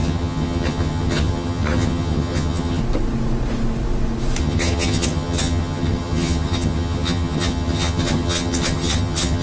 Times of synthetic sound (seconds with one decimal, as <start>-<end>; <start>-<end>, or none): 0.0-2.8; 4.4-9.4